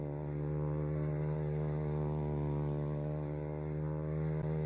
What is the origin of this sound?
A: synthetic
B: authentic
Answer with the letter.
B